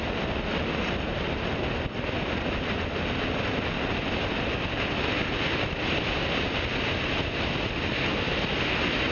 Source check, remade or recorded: recorded